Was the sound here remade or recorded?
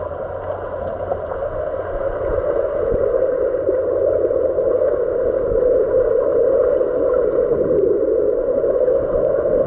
recorded